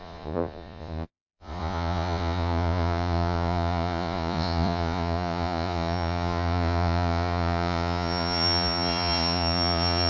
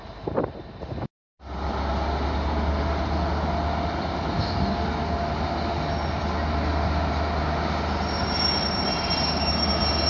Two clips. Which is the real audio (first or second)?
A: second